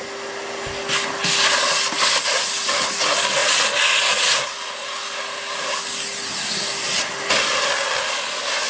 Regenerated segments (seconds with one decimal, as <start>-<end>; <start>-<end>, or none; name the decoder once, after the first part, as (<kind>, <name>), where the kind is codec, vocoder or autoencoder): none